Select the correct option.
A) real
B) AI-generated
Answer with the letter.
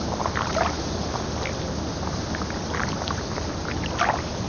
A